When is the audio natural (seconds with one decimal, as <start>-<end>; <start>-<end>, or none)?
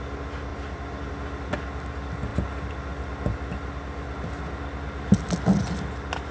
0.0-6.3